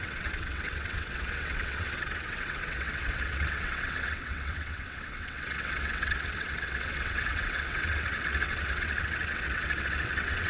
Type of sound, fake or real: fake